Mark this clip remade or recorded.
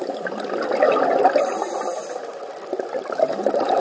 recorded